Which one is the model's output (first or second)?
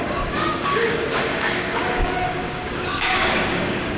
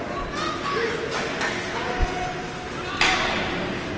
first